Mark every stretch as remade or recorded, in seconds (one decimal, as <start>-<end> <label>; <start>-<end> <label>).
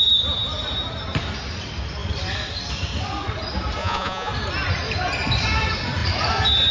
0.0-3.8 recorded; 3.8-4.3 remade; 4.3-6.7 recorded